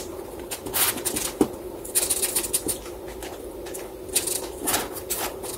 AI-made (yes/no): yes